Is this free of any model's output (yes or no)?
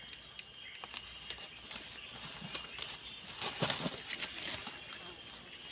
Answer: yes